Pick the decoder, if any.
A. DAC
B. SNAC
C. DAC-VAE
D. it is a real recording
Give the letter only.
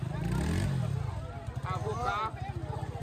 D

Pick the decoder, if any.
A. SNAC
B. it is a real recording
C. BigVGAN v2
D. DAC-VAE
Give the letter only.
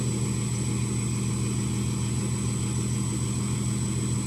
B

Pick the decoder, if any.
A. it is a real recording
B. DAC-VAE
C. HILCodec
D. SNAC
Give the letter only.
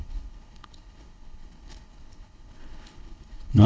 C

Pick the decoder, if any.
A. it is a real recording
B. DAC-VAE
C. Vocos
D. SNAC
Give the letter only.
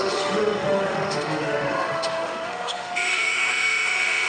B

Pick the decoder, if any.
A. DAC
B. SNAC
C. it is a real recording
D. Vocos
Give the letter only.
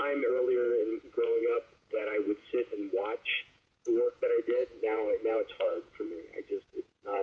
D